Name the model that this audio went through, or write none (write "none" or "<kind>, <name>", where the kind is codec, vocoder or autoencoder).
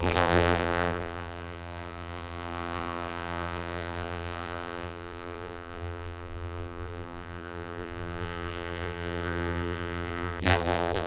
vocoder, BigVGAN v2